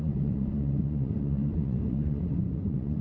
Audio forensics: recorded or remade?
remade